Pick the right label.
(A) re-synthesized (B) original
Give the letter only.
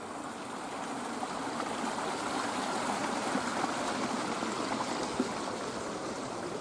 B